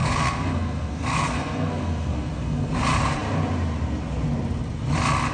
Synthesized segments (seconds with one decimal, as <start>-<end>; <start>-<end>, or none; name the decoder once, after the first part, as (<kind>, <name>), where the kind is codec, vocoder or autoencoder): 0.0-2.7 (codec, SNAC)